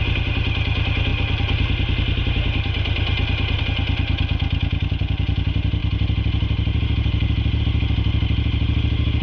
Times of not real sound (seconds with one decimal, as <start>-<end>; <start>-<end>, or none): none